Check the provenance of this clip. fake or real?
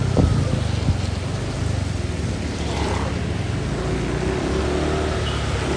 real